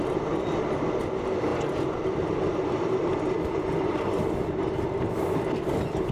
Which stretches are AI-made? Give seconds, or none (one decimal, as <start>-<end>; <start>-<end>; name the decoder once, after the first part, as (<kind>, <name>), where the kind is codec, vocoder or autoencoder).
none